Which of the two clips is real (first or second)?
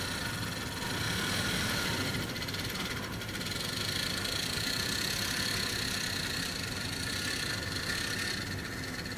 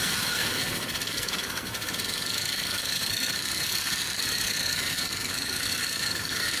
first